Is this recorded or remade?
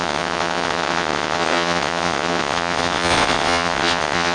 remade